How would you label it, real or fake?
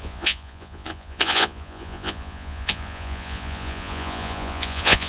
fake